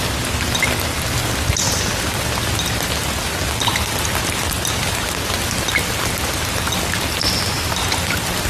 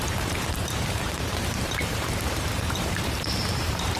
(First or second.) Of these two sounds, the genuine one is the first